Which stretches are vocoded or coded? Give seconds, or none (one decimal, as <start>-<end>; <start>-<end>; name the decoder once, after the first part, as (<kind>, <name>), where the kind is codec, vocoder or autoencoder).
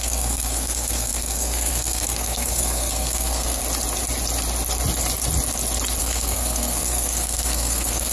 0.0-3.6 (codec, SNAC); 6.0-8.1